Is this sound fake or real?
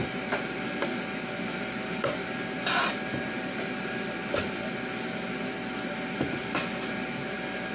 real